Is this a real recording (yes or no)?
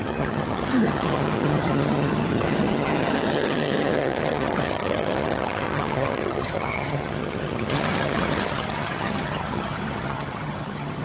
no